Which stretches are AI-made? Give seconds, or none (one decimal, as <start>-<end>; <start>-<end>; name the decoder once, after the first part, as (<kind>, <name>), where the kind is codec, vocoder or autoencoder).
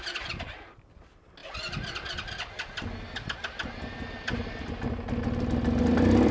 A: none